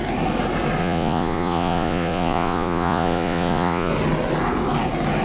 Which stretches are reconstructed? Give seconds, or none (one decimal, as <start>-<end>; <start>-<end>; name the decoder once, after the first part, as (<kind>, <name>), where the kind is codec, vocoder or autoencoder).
0.8-3.9 (vocoder, Vocos)